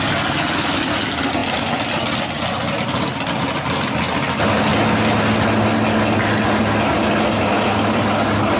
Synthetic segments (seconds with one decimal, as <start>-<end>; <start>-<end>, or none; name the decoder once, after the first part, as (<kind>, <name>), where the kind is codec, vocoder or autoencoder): none